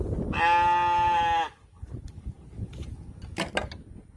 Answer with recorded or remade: recorded